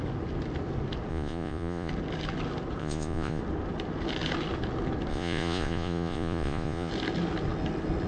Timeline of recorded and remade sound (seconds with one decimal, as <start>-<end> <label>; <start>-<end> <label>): 0.0-1.1 recorded; 1.1-1.9 remade; 1.9-2.8 recorded; 2.8-3.4 remade; 3.4-5.1 recorded; 5.1-6.9 remade; 6.9-8.1 recorded